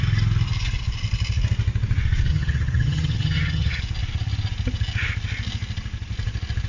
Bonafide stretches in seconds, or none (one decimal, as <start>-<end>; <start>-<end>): 0.0-2.3; 3.8-6.7